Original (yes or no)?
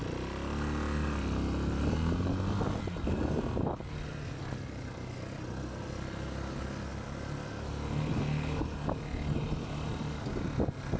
yes